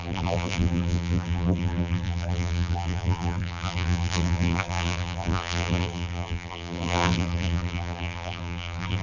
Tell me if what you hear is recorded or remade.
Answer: remade